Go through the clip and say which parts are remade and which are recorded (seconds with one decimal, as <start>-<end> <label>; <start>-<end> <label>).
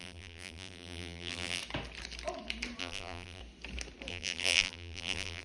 0.0-1.6 remade; 1.6-2.8 recorded; 2.8-3.4 remade; 3.4-4.1 recorded; 4.1-5.4 remade